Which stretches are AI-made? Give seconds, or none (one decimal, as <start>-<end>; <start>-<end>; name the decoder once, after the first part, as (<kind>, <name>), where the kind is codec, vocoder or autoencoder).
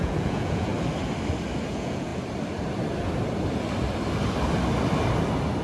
0.0-0.7 (vocoder, Vocos); 1.6-2.1